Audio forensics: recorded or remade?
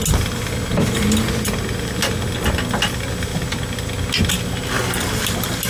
recorded